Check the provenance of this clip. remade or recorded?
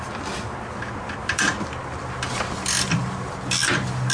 recorded